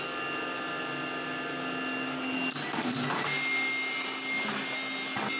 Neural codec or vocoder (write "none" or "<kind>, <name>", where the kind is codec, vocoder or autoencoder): none